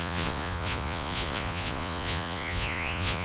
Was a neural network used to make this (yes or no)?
yes